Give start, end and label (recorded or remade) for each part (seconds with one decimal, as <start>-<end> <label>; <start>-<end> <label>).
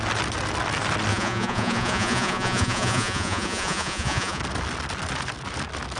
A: 0.0-1.1 recorded; 1.1-4.4 remade; 4.4-6.0 recorded